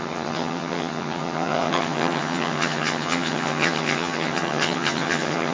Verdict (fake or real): fake